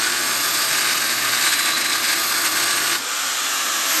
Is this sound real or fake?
real